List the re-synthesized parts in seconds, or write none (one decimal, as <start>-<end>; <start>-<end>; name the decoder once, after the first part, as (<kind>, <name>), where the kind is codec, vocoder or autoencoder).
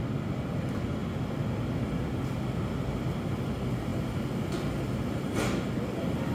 3.9-5.4 (vocoder, BigVGAN v2)